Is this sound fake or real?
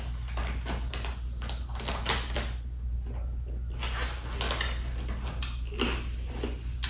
real